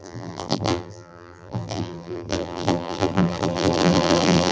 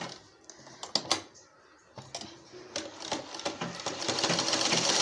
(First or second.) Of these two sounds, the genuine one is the second